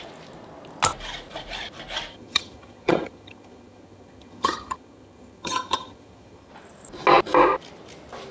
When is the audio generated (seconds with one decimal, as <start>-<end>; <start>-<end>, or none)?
2.1-6.5